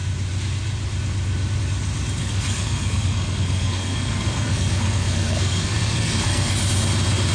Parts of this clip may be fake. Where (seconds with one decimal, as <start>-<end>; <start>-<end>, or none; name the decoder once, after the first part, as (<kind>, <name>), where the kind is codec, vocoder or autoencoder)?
2.2-6.6 (codec, SNAC)